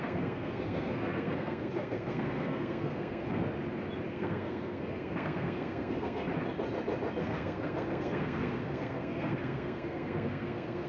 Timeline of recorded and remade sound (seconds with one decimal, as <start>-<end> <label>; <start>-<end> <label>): 0.0-3.4 remade; 3.4-4.1 recorded; 4.1-6.3 remade; 6.3-7.2 recorded; 7.2-10.9 remade